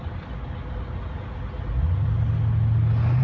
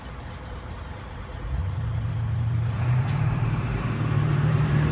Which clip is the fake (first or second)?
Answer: second